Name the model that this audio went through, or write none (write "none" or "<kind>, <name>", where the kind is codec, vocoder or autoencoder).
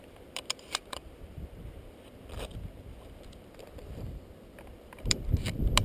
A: vocoder, BigVGAN v2